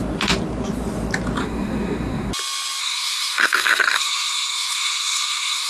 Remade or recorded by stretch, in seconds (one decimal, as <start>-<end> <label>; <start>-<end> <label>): 0.0-1.4 recorded; 1.4-2.3 remade; 2.3-2.8 recorded; 2.8-5.7 remade